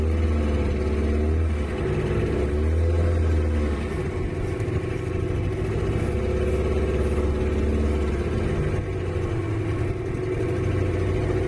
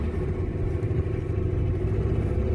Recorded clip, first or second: first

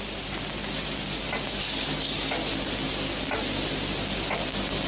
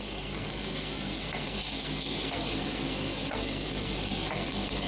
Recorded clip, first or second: first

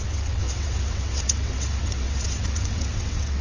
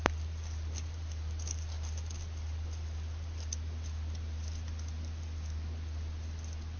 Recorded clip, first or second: second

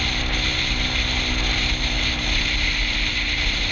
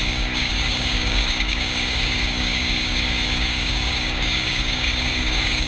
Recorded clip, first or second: first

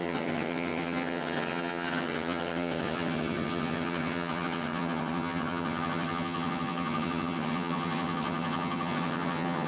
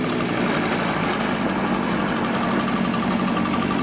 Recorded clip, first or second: second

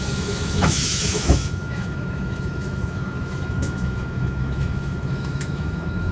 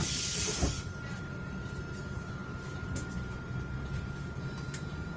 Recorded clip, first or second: second